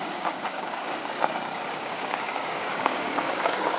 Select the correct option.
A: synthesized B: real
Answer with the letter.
A